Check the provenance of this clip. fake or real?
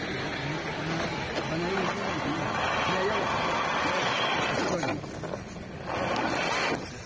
real